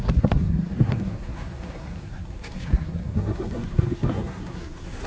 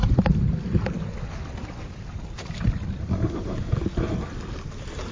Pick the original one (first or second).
second